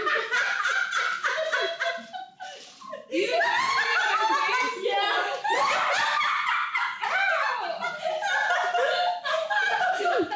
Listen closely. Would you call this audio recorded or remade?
recorded